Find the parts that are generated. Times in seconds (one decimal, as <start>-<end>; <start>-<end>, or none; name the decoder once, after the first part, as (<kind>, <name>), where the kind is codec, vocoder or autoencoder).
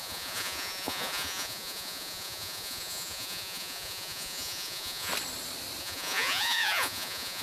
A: 0.0-5.1 (vocoder, Vocos); 5.8-7.4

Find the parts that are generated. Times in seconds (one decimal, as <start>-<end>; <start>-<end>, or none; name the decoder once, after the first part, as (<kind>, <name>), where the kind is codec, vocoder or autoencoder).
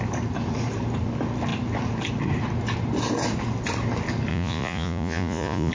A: 4.3-5.7 (vocoder, Vocos)